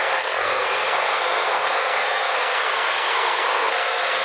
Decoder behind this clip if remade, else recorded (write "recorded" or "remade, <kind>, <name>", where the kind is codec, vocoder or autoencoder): remade, codec, SNAC